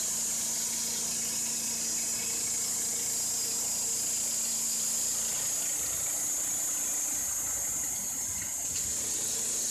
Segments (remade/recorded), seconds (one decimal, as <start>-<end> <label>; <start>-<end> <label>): 0.0-9.7 recorded